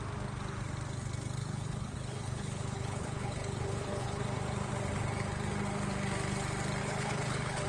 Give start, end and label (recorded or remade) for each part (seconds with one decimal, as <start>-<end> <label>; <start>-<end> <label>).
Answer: 0.0-1.4 recorded; 1.4-4.2 remade; 4.2-6.8 recorded; 6.8-7.7 remade